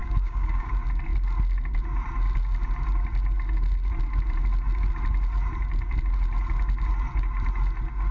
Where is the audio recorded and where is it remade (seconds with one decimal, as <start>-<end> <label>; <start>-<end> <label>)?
0.0-0.7 remade; 0.7-8.1 recorded

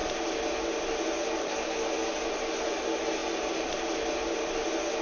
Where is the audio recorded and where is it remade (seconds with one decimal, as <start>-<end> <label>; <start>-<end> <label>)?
0.0-5.0 recorded

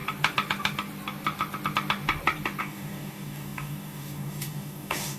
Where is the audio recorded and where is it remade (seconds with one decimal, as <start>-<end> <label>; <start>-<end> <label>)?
0.0-2.6 recorded; 2.6-5.2 remade